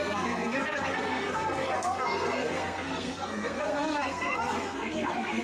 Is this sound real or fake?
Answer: fake